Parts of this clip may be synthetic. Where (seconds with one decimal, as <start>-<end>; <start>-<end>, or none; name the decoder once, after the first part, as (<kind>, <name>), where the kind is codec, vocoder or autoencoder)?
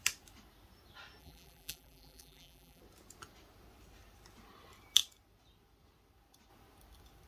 1.2-2.8 (vocoder, BigVGAN v2)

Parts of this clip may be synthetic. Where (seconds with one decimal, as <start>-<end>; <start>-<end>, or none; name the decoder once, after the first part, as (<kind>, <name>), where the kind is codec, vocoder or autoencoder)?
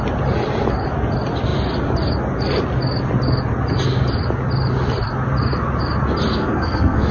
6.3-7.1 (codec, SNAC)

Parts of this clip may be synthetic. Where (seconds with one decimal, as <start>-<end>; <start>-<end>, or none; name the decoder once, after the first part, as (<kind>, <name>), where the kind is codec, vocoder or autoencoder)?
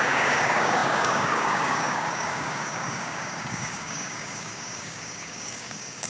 0.0-6.1 (codec, DAC)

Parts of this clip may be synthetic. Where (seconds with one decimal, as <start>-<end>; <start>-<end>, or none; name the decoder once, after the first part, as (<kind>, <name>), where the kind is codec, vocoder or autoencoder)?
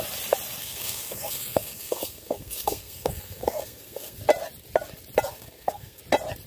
0.6-4.2 (codec, SNAC); 5.3-6.0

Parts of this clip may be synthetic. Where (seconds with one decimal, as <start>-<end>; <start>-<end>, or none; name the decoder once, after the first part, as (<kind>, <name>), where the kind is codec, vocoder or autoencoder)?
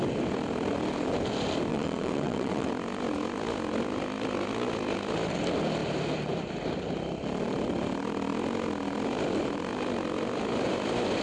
1.7-2.7 (vocoder, WaveNeXt)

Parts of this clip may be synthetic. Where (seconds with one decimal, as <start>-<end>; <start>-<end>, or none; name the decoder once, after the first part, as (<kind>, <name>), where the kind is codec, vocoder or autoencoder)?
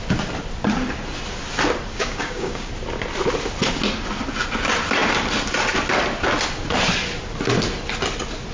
1.9-2.7 (codec, DAC)